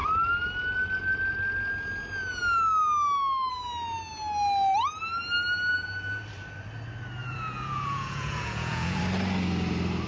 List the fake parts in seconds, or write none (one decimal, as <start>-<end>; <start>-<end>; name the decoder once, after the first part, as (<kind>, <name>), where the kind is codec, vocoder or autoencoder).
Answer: 7.2-9.0 (vocoder, Vocos)